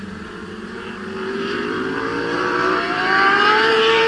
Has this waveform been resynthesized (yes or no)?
yes